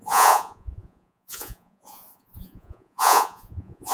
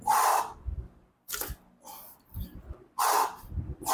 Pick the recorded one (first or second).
second